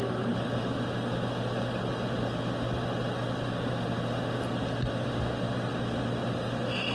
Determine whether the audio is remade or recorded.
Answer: recorded